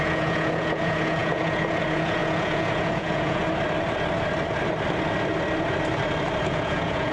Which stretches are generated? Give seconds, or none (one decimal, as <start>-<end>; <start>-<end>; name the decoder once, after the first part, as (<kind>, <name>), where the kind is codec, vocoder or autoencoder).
0.0-3.4 (vocoder, Vocos); 6.4-7.1